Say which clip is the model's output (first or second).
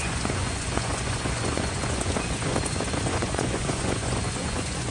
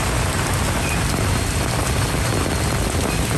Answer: first